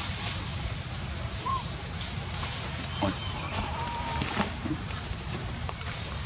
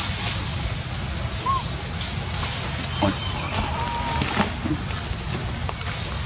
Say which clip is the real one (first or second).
second